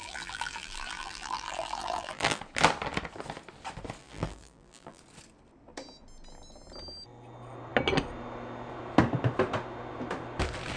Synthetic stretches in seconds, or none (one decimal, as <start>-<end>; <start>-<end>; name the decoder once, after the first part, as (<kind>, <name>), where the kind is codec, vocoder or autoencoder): 0.0-2.4 (vocoder, BigVGAN v2); 4.0-5.0